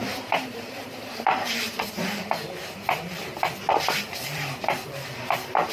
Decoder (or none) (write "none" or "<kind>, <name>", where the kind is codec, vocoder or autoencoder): vocoder, BigVGAN v2